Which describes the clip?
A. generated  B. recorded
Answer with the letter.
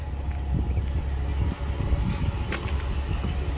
B